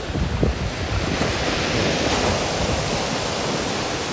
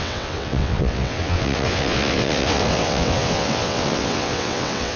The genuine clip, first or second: first